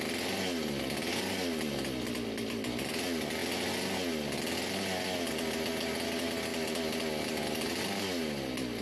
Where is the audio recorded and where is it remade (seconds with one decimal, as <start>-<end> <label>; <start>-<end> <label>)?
0.0-8.8 recorded